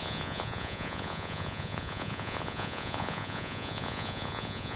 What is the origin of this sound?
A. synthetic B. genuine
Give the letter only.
A